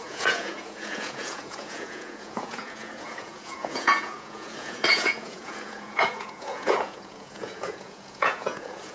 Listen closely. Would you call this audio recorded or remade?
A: remade